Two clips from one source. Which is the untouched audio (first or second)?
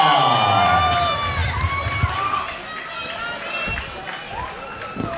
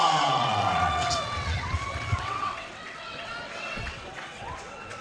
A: first